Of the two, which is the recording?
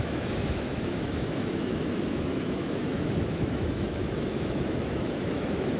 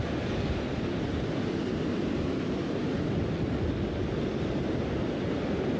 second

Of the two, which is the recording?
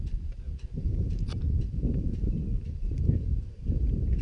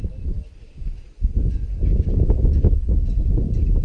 second